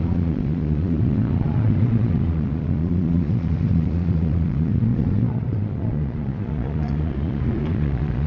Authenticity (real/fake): fake